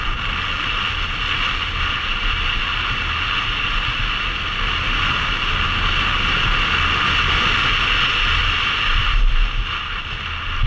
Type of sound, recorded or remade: recorded